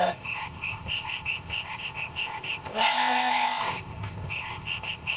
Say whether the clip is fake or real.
fake